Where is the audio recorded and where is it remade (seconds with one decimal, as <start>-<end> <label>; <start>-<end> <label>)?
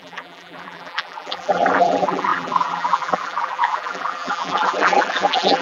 0.0-5.6 remade